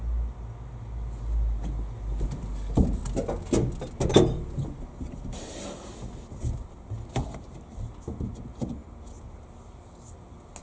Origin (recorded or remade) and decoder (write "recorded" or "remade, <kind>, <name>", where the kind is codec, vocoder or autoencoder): recorded